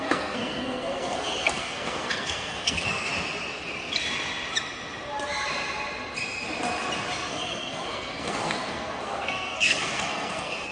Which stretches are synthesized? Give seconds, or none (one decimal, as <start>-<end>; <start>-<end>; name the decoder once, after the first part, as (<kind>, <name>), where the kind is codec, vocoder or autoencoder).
0.0-3.1 (codec, SNAC); 7.3-10.7